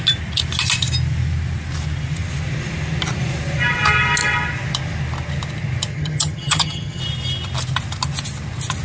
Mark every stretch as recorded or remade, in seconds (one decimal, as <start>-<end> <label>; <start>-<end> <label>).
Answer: 0.0-5.9 recorded; 5.9-7.0 remade; 7.0-8.8 recorded